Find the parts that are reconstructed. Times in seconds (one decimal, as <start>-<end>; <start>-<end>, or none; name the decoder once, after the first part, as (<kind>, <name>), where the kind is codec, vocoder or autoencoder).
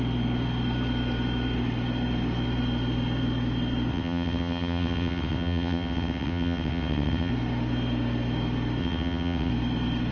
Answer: 3.9-7.3 (vocoder, WaveNeXt); 8.8-9.5